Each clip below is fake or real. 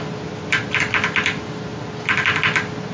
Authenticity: real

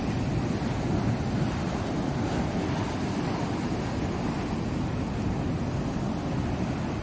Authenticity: real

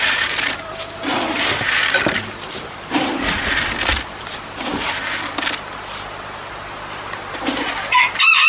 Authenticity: real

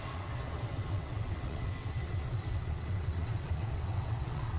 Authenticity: fake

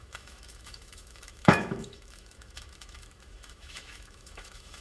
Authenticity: fake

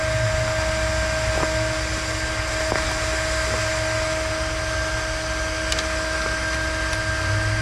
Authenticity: real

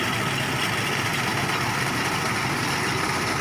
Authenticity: real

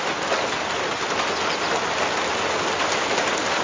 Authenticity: real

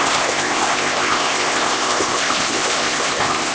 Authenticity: fake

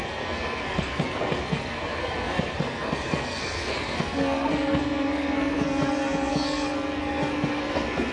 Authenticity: fake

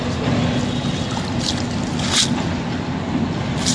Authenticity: real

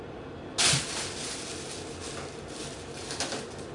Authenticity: real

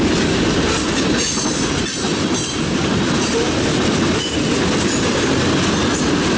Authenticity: real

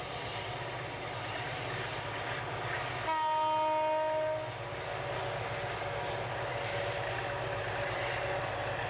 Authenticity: real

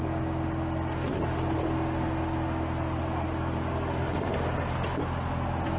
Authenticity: real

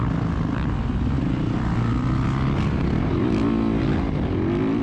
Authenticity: real